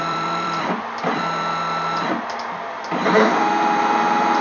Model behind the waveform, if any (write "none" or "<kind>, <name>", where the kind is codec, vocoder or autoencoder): vocoder, BigVGAN v2